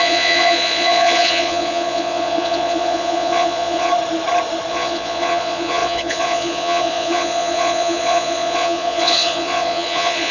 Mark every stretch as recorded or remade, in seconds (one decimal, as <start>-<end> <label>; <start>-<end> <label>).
0.0-3.9 remade; 3.9-4.7 recorded; 4.7-10.3 remade